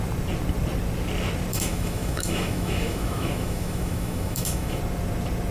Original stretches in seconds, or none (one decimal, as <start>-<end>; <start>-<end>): 0.0-1.5; 4.8-5.5

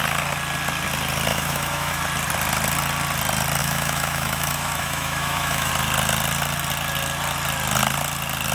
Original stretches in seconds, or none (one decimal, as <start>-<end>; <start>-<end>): 0.0-1.3; 2.0-3.6; 5.7-8.5